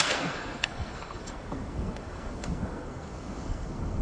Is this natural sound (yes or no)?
no